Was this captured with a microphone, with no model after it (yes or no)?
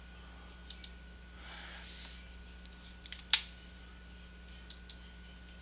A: yes